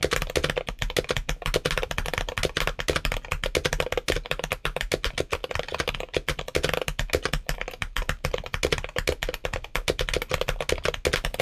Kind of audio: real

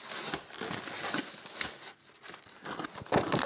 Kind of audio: real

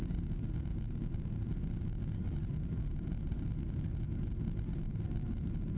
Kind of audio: real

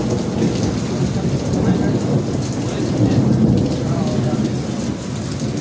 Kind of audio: real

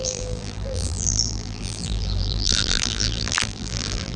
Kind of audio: fake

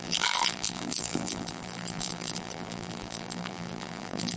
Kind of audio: fake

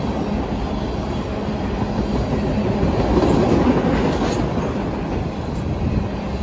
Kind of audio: real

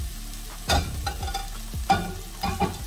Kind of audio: real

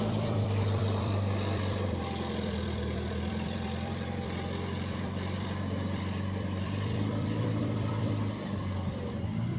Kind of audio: fake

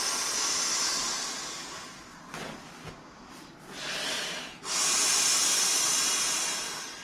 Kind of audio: real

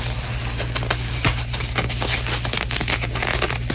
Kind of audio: real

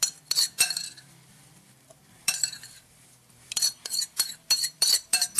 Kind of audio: fake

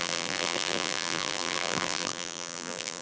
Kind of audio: fake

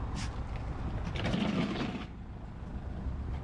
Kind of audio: real